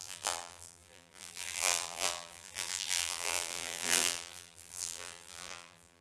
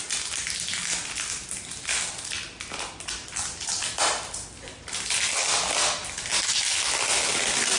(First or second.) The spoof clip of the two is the first